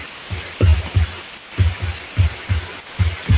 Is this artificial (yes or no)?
no